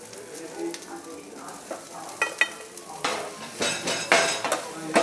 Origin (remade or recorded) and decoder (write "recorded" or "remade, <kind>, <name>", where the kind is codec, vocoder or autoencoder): recorded